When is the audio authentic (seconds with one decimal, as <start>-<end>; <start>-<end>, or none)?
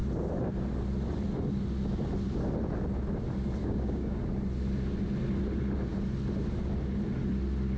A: 0.0-3.6; 4.2-7.8